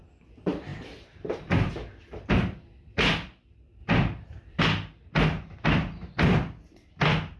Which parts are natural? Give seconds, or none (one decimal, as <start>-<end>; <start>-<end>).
none